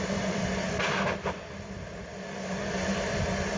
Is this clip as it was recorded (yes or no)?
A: yes